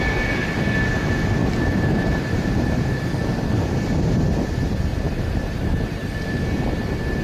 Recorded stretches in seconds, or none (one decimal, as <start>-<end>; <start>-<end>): 0.0-1.4; 3.7-4.9; 6.4-7.2